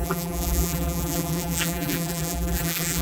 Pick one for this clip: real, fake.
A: fake